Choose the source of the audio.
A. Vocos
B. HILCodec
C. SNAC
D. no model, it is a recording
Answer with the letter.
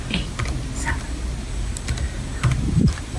D